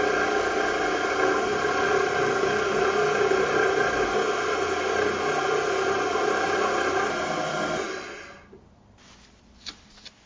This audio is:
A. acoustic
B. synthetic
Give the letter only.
A